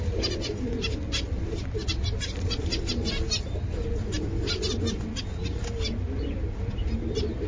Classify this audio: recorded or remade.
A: recorded